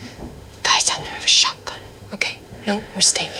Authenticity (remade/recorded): remade